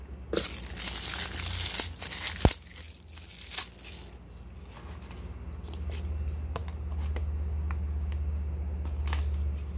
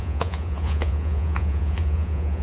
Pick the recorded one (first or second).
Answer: first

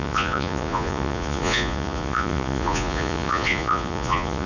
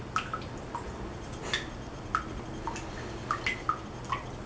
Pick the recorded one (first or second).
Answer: second